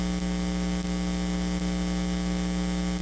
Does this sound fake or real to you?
real